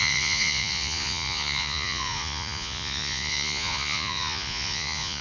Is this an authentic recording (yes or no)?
no